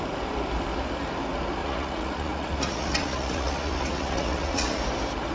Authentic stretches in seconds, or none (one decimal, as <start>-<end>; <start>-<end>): 0.0-1.6; 4.8-5.3